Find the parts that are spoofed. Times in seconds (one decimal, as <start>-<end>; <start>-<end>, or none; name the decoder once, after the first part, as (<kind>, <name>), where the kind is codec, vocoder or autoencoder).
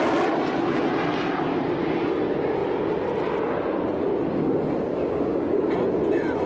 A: 4.9-5.6 (codec, DAC)